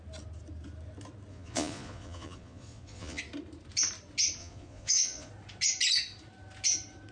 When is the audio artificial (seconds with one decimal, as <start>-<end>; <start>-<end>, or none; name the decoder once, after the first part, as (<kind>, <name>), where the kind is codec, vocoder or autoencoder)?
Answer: 1.3-3.2 (vocoder, Vocos); 4.4-5.3